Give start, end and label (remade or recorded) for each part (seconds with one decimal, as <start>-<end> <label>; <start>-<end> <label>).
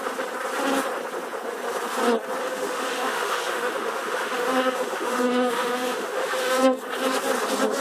0.0-2.4 recorded; 2.4-6.8 remade; 6.8-7.8 recorded